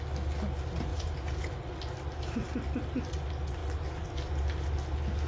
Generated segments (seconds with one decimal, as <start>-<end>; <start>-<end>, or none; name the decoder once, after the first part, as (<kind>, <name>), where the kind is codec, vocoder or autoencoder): 0.9-1.6 (vocoder, Vocos)